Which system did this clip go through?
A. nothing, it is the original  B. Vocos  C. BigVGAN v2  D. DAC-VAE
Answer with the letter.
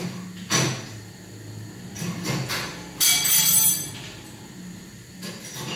A